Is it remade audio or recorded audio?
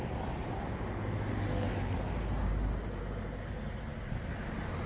recorded